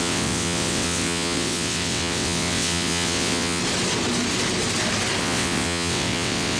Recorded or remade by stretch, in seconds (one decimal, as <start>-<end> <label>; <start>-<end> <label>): 0.0-3.6 remade; 3.6-5.2 recorded; 5.2-6.6 remade